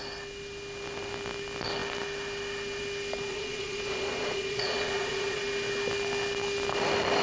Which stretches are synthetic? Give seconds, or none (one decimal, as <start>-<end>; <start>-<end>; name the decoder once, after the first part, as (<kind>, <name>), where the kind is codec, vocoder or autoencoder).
3.3-5.4 (vocoder, Vocos)